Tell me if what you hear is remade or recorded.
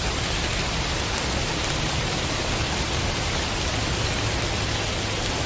recorded